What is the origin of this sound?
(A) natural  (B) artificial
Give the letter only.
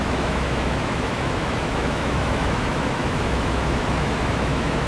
B